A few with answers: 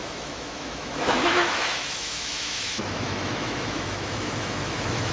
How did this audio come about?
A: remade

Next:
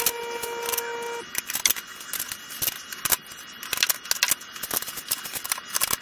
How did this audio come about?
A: recorded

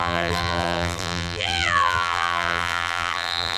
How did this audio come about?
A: remade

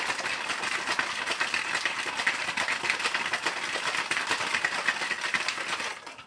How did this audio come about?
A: recorded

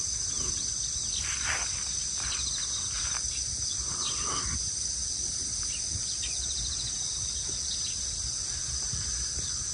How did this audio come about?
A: recorded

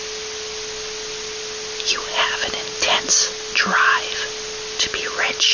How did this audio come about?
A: recorded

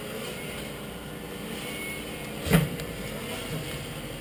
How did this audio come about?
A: recorded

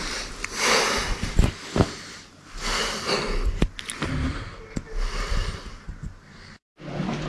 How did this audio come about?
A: recorded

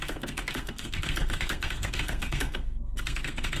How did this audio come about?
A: remade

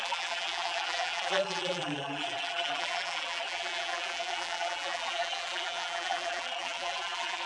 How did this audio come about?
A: remade